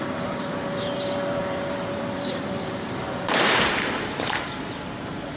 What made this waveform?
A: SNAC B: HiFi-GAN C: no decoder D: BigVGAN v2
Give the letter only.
D